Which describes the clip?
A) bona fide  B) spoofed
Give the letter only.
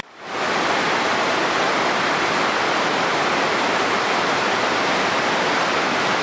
B